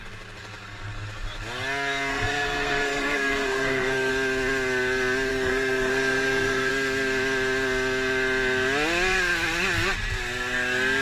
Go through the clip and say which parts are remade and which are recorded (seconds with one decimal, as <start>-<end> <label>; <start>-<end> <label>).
0.0-2.1 recorded; 2.1-4.1 remade; 4.1-5.3 recorded; 5.3-6.7 remade; 6.7-11.0 recorded